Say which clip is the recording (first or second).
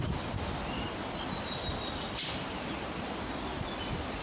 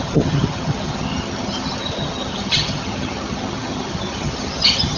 first